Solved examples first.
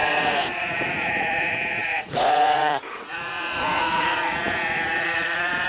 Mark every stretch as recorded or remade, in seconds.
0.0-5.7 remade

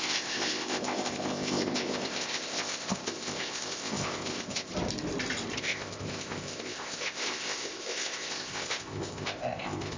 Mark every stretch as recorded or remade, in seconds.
0.0-4.7 remade; 4.7-5.6 recorded; 5.6-10.0 remade

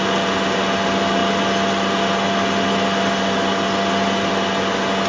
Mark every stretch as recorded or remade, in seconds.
0.0-5.1 recorded